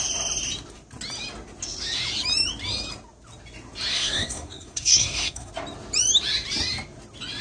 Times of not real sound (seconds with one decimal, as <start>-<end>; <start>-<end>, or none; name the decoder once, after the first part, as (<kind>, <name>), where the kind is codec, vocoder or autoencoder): 3.9-5.5 (codec, SNAC)